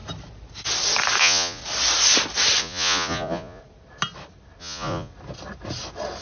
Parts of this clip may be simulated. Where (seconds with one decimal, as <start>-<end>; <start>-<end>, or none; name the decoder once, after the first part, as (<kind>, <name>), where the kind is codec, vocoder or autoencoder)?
1.2-1.6 (vocoder, Vocos); 2.6-3.6; 4.6-5.1

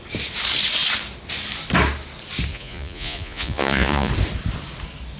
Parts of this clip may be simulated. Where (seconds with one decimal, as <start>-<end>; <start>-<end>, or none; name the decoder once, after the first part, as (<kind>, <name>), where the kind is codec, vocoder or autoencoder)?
2.5-4.1 (vocoder, Vocos)